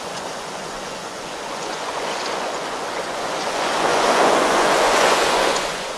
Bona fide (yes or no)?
no